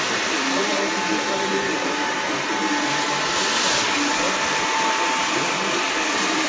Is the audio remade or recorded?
recorded